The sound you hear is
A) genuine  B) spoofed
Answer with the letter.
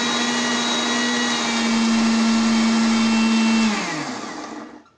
A